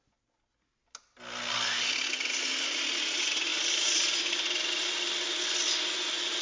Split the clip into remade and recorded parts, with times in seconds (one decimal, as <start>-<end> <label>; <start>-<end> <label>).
0.0-6.4 recorded